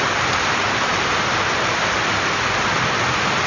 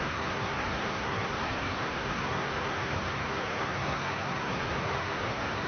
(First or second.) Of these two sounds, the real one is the first